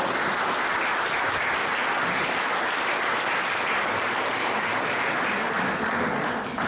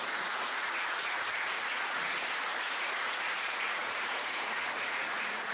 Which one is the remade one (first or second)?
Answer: second